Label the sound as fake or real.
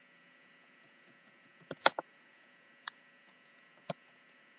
fake